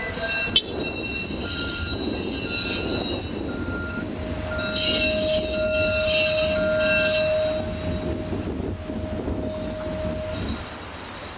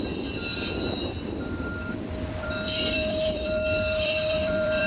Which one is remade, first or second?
second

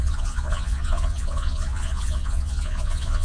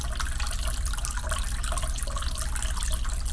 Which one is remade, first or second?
first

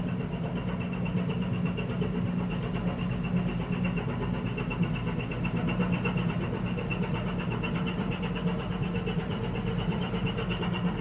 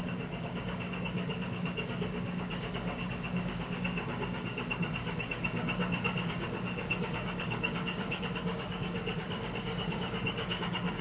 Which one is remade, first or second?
second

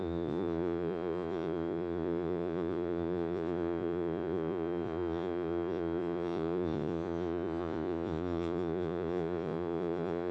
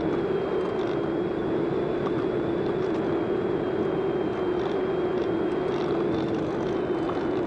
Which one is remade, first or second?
first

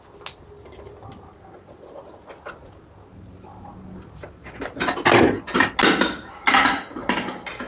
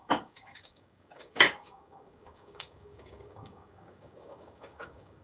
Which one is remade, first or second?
second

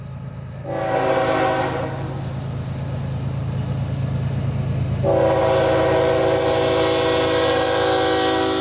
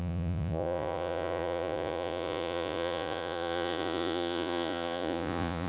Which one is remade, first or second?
second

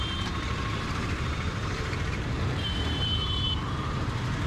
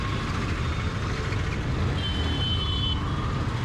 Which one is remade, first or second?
first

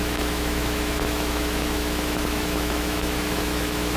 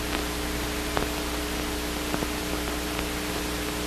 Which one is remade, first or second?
first